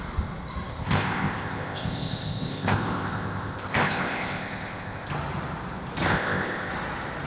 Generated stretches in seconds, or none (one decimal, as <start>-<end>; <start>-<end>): 0.7-5.1; 6.1-6.7